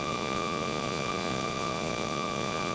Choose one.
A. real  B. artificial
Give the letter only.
B